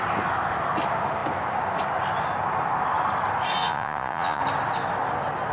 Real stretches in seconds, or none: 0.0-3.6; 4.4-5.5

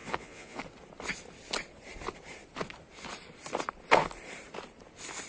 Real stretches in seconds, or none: 0.6-5.3

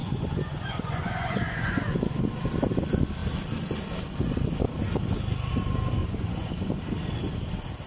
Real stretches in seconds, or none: 2.2-6.0; 6.8-7.9

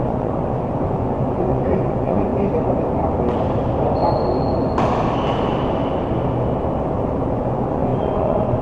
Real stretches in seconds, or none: 2.3-7.3

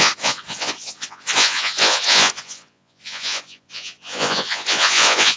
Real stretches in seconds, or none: none

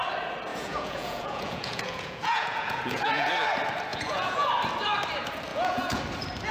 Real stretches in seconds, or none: 0.0-0.5; 3.3-3.9; 4.5-5.5; 6.0-6.5

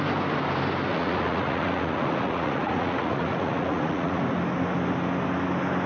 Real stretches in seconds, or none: 0.0-0.9; 4.2-5.9

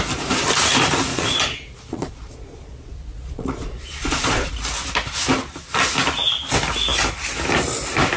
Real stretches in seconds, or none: 0.0-1.1; 4.5-8.2